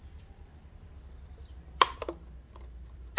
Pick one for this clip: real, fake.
fake